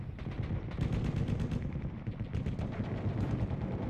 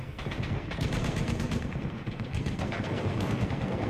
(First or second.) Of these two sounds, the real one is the first